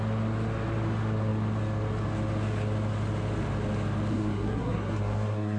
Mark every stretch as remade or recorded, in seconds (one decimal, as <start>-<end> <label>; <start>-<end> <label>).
0.0-4.1 recorded; 4.1-5.6 remade